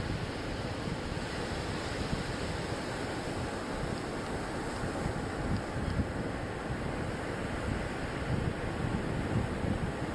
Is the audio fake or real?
real